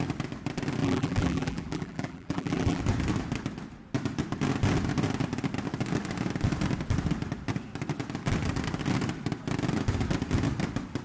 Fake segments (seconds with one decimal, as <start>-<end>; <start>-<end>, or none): 0.8-2.8

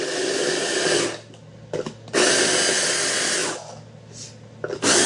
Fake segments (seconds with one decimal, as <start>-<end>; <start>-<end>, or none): none

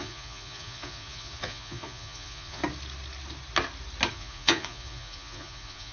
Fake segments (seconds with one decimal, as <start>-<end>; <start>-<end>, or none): 0.0-2.6; 4.1-5.9

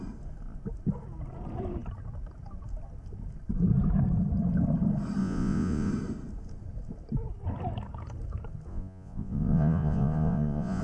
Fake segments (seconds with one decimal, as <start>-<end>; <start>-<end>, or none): 5.2-5.9; 8.7-10.8